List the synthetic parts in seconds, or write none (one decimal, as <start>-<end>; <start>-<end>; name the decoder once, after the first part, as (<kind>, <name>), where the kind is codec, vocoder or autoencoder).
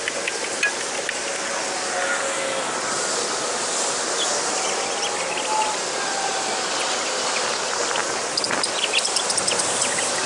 none